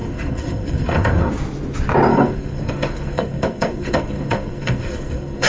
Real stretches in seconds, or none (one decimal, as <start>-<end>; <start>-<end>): 1.3-2.1

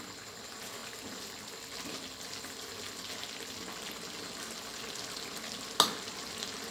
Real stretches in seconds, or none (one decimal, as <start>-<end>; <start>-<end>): 0.0-6.7

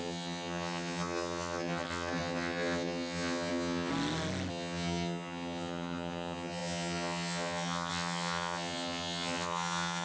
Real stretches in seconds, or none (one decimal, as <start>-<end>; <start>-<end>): 3.9-4.5

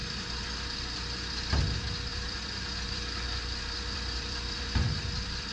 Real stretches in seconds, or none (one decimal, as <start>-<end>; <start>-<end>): 0.0-2.1

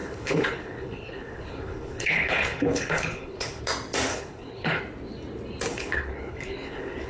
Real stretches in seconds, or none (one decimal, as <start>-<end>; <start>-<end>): 3.6-4.1; 4.8-5.7

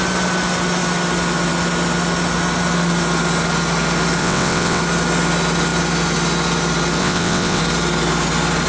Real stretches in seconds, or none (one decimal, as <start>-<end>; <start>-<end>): 0.0-4.2; 4.8-7.0; 7.6-8.7

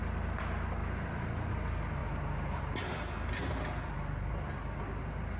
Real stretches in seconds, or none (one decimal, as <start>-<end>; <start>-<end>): 0.0-5.4